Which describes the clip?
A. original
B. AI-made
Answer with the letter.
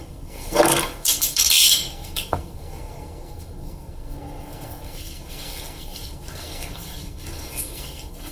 B